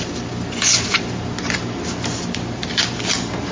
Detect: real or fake real